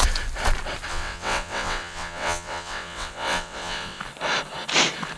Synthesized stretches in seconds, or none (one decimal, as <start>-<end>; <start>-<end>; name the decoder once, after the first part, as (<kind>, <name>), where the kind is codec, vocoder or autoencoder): 0.9-4.0 (vocoder, WaveNeXt)